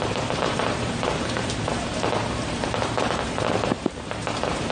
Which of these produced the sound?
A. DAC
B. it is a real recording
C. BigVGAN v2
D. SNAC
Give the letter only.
C